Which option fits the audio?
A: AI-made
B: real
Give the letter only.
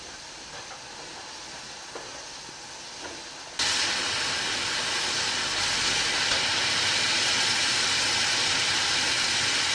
B